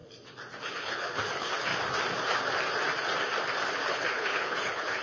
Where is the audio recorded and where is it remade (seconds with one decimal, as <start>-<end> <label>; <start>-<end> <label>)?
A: 0.0-0.6 recorded; 0.6-1.7 remade; 1.7-3.7 recorded; 3.7-5.0 remade